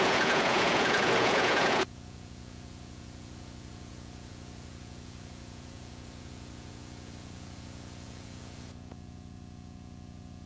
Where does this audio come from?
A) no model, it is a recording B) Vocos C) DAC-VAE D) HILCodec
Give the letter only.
B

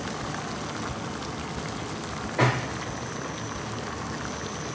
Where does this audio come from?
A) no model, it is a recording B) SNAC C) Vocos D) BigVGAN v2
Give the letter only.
A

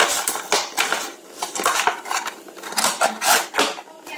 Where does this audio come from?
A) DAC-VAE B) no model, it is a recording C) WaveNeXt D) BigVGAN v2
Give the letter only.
B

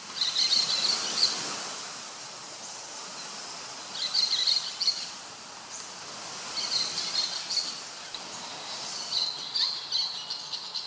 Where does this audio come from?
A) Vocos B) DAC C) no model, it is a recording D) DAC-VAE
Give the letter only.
C